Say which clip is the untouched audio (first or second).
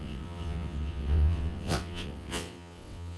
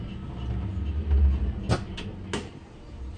second